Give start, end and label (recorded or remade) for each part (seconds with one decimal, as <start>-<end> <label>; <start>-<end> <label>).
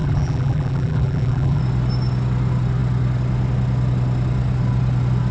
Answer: 0.0-1.6 remade; 1.6-5.3 recorded